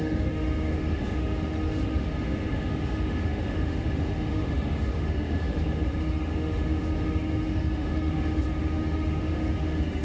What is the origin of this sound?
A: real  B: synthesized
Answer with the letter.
B